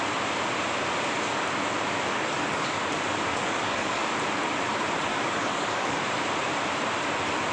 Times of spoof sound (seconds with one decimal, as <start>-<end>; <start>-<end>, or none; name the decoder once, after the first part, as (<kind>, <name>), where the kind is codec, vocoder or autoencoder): 2.1-2.8 (codec, DAC); 3.3-4.1; 5.1-6.0